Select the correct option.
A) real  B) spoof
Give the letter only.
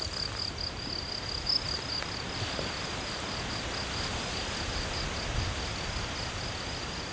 A